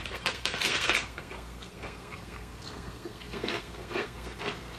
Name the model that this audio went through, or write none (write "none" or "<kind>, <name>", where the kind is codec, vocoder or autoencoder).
codec, SNAC